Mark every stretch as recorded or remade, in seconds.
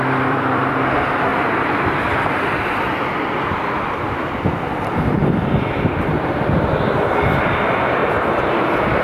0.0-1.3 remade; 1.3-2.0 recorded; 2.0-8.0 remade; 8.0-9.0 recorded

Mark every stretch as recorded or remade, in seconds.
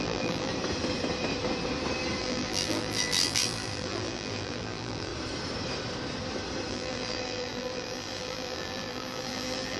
0.0-0.5 remade; 0.5-2.2 recorded; 2.2-5.1 remade; 5.1-6.7 recorded; 6.7-9.8 remade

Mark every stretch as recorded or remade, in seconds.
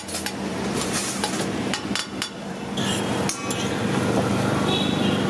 0.0-0.5 recorded; 0.5-1.3 remade; 1.3-2.0 recorded; 2.0-2.8 remade; 2.8-5.3 recorded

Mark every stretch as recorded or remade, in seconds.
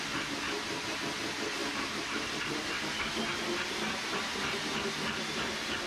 0.0-5.9 recorded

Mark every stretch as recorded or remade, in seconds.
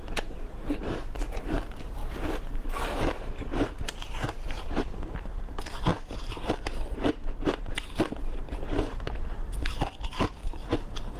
0.0-10.4 remade; 10.4-11.2 recorded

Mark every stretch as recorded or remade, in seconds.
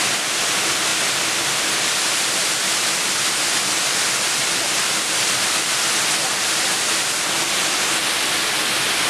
0.0-9.1 recorded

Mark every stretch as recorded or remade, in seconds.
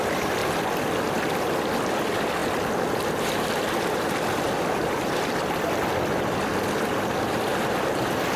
0.0-0.4 remade; 0.4-1.9 recorded; 1.9-2.4 remade; 2.4-3.1 recorded; 3.1-5.9 remade; 5.9-8.4 recorded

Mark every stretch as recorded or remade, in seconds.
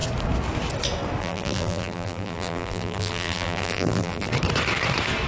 0.0-1.2 recorded; 1.2-4.3 remade; 4.3-5.3 recorded